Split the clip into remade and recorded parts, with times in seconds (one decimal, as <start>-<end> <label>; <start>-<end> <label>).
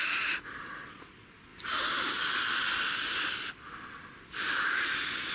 0.0-1.5 recorded; 1.5-2.1 remade; 2.1-5.3 recorded